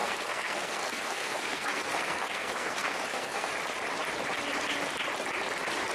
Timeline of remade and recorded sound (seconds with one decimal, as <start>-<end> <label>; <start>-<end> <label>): 0.0-3.5 remade; 3.5-5.9 recorded